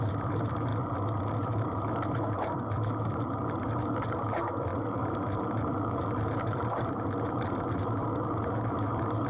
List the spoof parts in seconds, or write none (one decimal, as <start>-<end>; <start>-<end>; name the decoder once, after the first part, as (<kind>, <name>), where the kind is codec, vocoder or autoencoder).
0.0-0.7 (vocoder, BigVGAN v2); 1.3-9.3